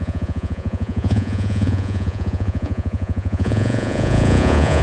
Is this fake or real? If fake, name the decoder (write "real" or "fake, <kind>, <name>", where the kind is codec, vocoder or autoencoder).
fake, vocoder, Vocos